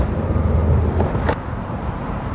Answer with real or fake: real